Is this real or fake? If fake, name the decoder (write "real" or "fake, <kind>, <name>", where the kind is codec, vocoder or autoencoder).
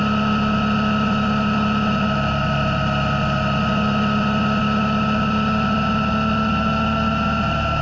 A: real